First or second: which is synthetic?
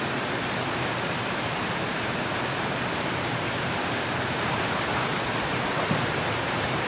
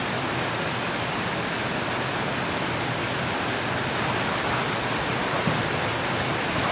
first